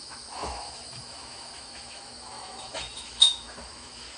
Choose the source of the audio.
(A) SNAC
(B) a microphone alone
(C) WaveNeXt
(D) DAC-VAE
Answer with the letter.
D